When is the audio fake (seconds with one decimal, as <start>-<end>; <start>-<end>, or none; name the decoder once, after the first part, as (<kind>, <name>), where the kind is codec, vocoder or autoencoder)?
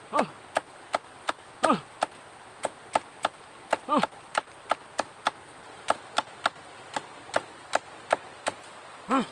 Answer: none